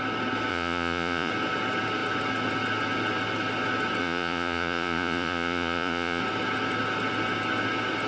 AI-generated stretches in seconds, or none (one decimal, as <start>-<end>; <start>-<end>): 0.5-1.3; 4.0-6.2